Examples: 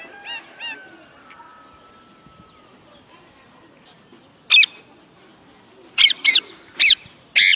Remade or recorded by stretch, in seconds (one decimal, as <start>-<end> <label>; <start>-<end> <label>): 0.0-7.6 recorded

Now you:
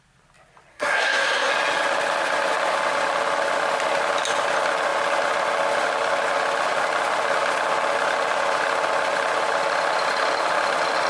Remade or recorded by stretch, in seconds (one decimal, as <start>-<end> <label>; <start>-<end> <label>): 0.0-0.7 recorded; 0.7-1.5 remade; 1.5-11.1 recorded

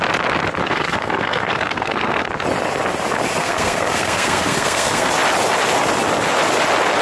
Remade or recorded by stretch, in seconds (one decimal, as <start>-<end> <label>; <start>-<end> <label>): 0.0-0.6 recorded; 0.6-2.3 remade; 2.3-3.4 recorded; 3.4-5.1 remade; 5.1-7.0 recorded